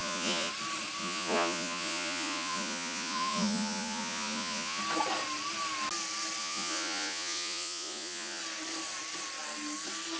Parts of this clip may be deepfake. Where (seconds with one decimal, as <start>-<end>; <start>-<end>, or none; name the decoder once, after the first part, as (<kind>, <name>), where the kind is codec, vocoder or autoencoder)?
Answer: 0.0-0.5 (vocoder, Vocos); 1.0-4.8; 6.4-8.4